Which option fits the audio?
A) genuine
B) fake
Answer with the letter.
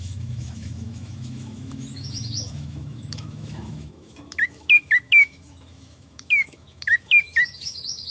B